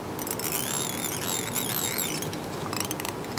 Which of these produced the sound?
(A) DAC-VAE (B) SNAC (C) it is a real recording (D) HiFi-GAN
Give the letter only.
C